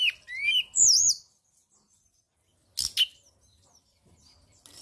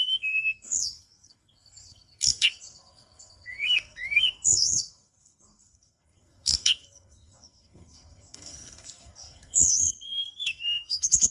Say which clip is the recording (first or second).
first